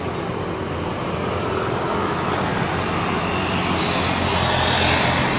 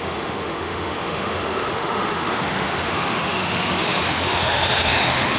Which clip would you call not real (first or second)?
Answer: second